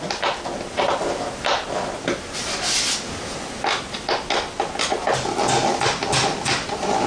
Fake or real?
real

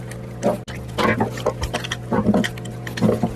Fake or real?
real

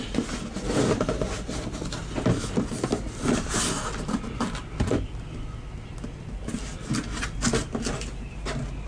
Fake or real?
real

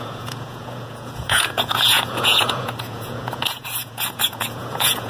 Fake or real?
fake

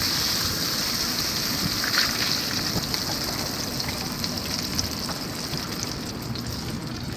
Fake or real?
real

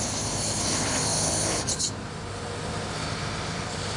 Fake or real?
real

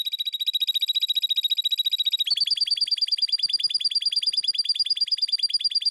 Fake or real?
real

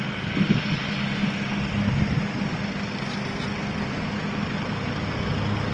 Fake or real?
real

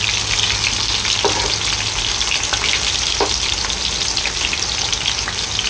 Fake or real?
real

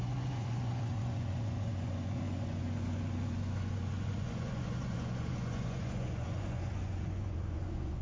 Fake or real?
fake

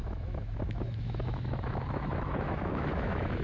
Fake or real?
fake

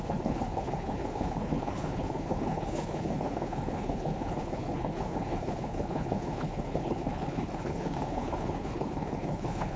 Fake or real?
fake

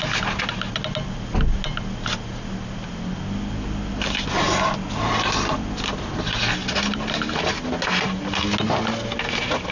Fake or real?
real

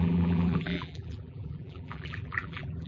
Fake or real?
fake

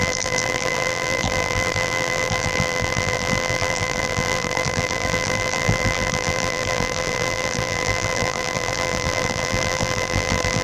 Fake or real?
fake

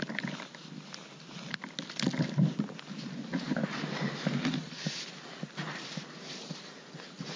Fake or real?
real